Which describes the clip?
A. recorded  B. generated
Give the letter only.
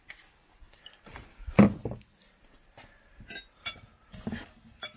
A